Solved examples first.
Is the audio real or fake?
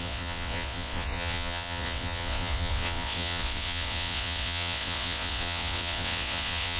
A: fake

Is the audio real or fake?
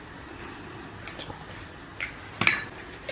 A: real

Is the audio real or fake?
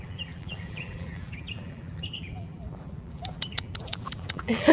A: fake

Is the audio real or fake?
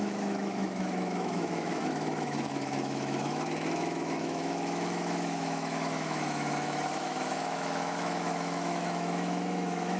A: fake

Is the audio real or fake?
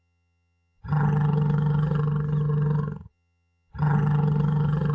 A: fake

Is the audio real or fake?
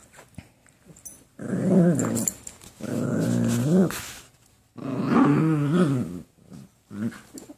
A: real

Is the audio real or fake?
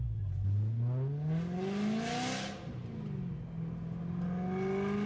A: real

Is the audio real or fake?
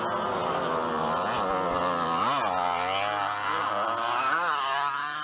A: real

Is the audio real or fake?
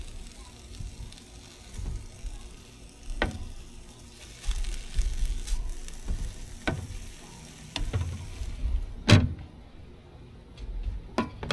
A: real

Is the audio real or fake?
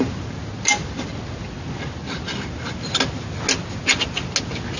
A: real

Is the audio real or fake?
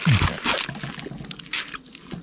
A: real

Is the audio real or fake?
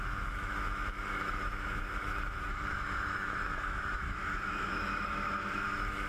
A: fake